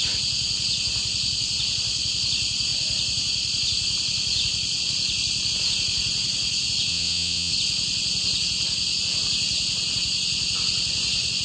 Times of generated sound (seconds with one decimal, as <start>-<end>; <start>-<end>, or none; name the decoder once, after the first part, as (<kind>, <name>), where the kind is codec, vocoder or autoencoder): 6.9-7.5 (vocoder, WaveNeXt)